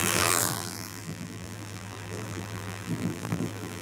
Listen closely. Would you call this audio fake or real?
fake